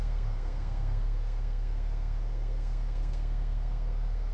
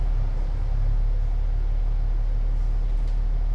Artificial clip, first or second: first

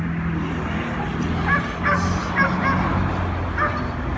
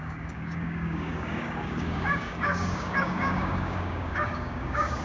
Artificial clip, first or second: second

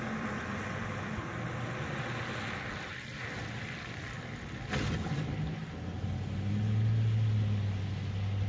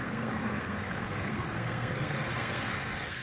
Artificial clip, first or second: second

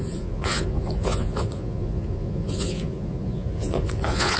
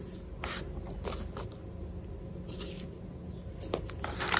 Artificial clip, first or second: first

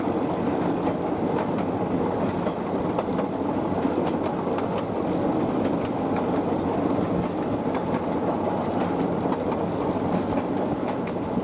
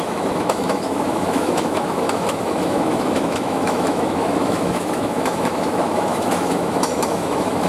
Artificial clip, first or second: second